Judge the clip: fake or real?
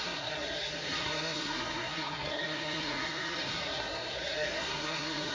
fake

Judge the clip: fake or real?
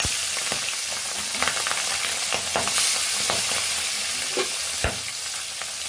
real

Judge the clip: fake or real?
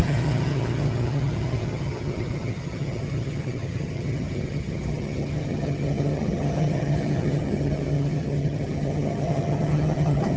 fake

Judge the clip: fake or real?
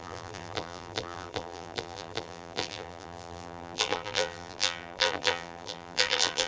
fake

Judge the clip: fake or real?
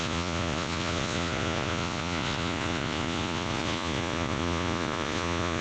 fake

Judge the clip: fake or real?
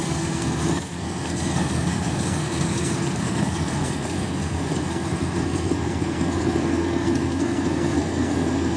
fake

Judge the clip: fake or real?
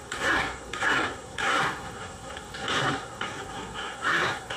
fake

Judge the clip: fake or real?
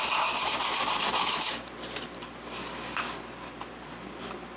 real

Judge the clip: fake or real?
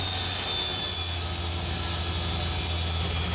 real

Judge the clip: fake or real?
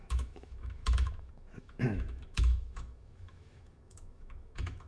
fake